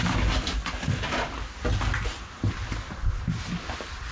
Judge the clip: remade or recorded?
recorded